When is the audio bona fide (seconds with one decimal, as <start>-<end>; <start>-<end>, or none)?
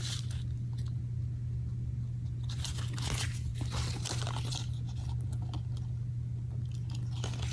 0.0-7.5